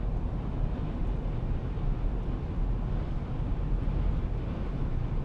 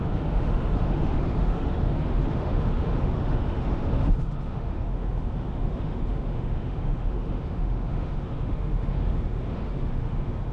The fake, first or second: second